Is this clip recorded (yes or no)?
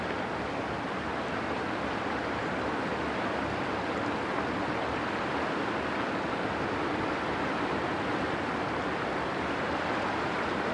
yes